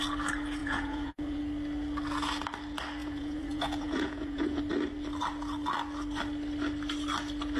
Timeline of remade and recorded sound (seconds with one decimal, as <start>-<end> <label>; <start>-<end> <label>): 0.0-0.6 recorded; 0.6-1.4 remade; 1.4-3.0 recorded; 3.0-4.6 remade; 4.6-7.6 recorded